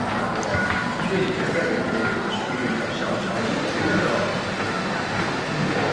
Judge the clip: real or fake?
real